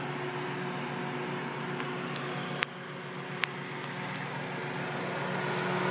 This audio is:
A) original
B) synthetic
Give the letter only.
A